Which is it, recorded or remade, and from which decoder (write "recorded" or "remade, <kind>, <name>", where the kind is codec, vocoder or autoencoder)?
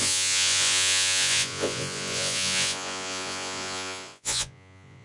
remade, vocoder, Vocos